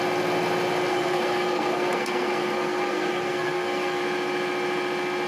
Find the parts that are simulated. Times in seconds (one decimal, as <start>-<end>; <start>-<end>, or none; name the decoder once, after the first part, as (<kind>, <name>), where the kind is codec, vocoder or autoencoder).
0.9-4.0 (codec, SNAC)